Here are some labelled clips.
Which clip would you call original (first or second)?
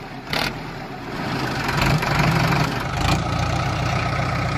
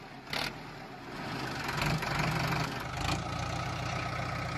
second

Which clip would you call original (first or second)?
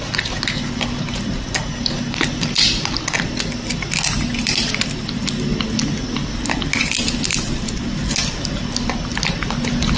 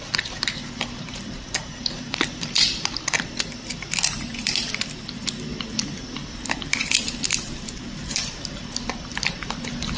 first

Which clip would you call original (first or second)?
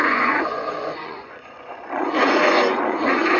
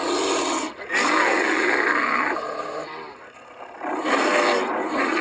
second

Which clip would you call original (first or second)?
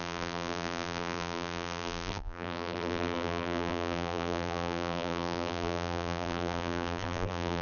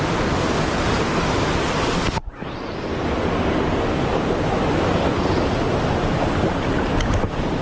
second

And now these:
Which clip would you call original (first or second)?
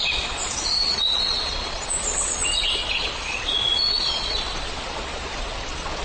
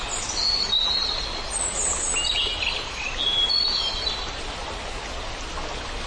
second